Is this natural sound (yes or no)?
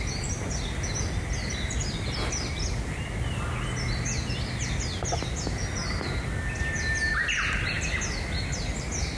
yes